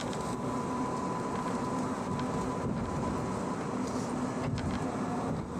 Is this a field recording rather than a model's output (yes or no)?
yes